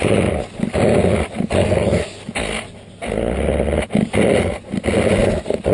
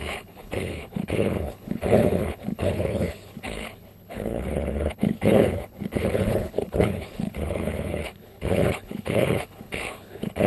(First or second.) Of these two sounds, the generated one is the second